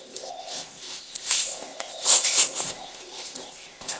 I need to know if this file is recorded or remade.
remade